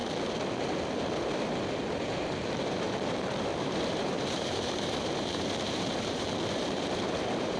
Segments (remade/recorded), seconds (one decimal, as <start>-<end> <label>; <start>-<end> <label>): 0.0-2.5 recorded; 2.5-7.6 remade